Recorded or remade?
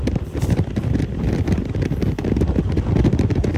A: recorded